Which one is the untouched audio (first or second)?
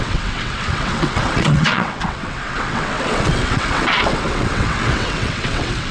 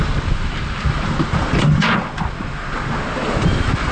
second